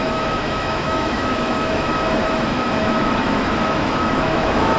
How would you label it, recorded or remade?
remade